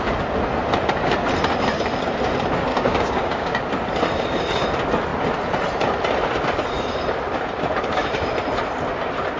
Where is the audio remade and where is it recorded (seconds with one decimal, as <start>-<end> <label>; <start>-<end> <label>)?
0.0-2.7 recorded; 2.7-3.6 remade; 3.6-9.4 recorded

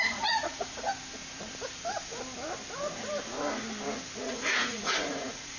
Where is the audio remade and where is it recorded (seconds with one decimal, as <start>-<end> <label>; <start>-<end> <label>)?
0.0-0.9 remade; 0.9-4.3 recorded; 4.3-5.6 remade

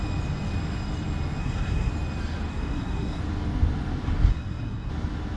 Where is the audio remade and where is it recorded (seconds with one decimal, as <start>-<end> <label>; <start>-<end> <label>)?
0.0-1.4 recorded; 1.4-1.9 remade; 1.9-2.5 recorded; 2.5-3.2 remade; 3.2-4.3 recorded; 4.3-4.9 remade; 4.9-5.4 recorded

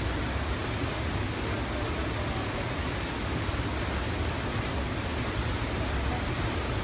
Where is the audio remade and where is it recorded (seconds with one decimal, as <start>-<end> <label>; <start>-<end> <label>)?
0.0-6.8 recorded

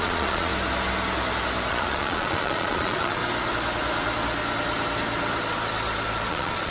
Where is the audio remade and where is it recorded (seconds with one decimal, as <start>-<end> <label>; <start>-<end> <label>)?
0.0-0.5 remade; 0.5-1.7 recorded; 1.7-3.2 remade; 3.2-6.3 recorded; 6.3-6.7 remade

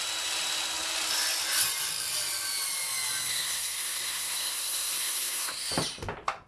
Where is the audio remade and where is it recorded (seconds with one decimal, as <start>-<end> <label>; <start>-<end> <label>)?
0.0-3.3 recorded; 3.3-5.7 remade; 5.7-6.5 recorded